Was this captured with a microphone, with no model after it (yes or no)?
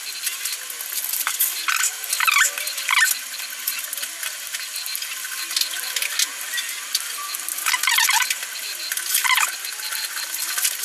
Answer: yes